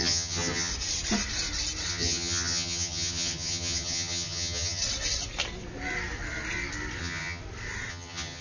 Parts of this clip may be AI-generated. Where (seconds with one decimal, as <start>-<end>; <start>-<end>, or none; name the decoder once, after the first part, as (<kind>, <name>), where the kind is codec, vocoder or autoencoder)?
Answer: 0.0-0.7 (vocoder, HiFi-GAN); 1.9-4.8; 7.0-7.4; 7.9-8.4